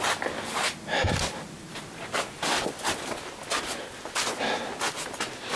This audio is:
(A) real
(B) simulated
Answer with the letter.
A